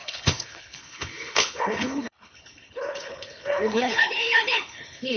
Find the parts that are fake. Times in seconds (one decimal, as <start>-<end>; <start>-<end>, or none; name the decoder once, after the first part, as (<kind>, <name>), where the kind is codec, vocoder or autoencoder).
0.0-5.2 (codec, HILCodec)